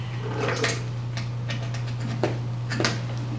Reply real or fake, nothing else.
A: real